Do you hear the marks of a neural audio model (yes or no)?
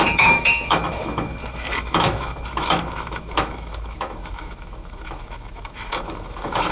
yes